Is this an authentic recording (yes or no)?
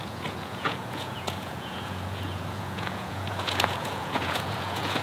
no